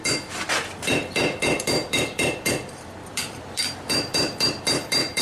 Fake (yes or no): yes